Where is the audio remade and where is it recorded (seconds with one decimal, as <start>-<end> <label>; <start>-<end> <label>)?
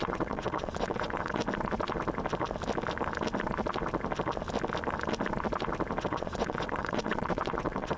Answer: 0.0-1.4 remade; 1.4-6.0 recorded; 6.0-8.0 remade